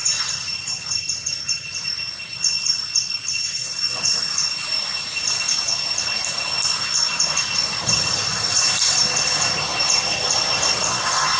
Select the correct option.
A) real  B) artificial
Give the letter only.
A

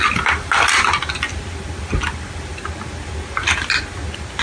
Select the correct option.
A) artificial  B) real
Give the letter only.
B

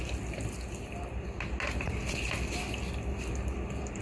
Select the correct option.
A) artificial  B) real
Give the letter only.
B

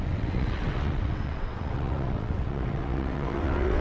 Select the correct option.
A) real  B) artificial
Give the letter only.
B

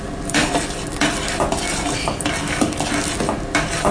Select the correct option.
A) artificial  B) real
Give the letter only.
B